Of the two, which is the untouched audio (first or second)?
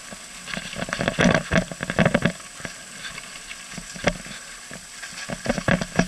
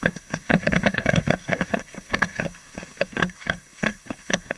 first